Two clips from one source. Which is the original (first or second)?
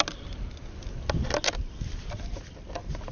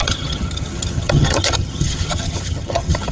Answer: first